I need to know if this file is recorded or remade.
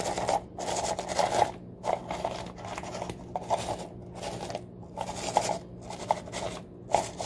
recorded